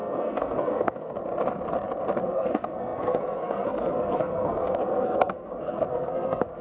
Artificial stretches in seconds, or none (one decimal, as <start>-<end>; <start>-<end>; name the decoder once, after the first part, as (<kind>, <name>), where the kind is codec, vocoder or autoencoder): 0.0-1.2 (codec, SNAC); 2.2-6.6